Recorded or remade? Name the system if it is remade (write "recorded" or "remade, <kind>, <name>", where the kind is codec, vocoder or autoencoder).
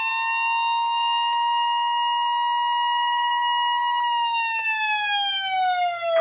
recorded